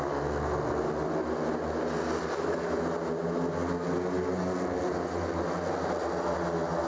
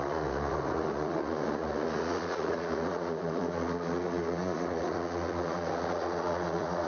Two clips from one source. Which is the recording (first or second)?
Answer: first